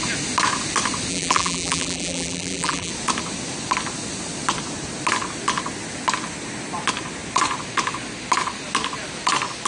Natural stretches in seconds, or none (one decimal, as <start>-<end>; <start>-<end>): 0.0-1.1; 2.9-9.7